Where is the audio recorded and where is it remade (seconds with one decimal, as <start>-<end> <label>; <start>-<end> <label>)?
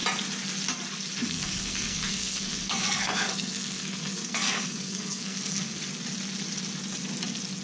0.0-1.2 recorded; 1.2-5.8 remade; 5.8-7.6 recorded